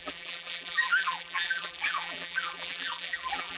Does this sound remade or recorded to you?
remade